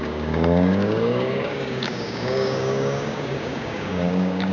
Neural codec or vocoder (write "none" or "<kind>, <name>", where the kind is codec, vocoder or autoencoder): codec, DAC